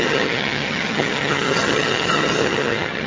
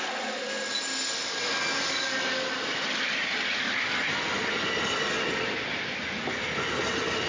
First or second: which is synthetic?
first